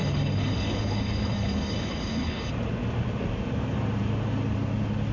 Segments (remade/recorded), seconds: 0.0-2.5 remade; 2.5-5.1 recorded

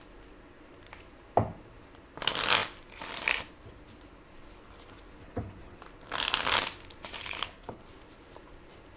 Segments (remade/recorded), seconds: 0.0-5.2 recorded; 5.2-5.8 remade; 5.8-7.2 recorded; 7.2-7.8 remade; 7.8-9.0 recorded

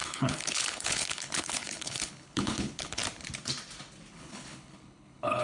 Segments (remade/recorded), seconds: 0.0-3.0 remade; 3.0-4.1 recorded; 4.1-5.4 remade

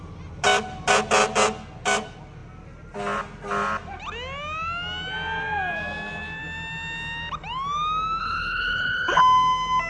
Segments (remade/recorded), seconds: 0.0-8.2 recorded; 8.2-9.2 remade; 9.2-9.9 recorded

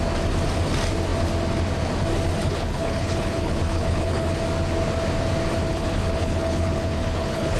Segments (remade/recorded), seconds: 0.0-2.4 recorded; 2.4-4.4 remade; 4.4-5.7 recorded; 5.7-7.6 remade